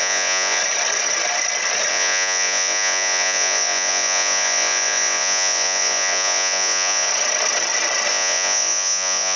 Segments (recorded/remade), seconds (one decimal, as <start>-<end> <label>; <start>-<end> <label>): 0.0-0.6 remade; 0.6-1.9 recorded; 1.9-7.1 remade; 7.1-8.1 recorded; 8.1-9.4 remade